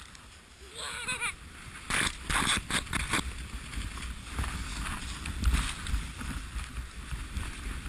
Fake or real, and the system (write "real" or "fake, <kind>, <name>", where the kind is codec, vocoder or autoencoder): real